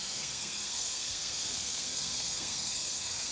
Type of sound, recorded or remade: remade